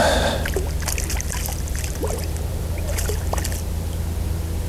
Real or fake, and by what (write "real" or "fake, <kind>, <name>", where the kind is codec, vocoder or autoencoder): real